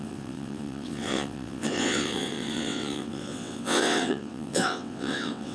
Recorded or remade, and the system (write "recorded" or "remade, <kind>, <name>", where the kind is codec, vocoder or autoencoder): remade, vocoder, WaveNeXt